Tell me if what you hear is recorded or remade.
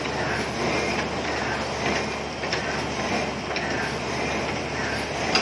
recorded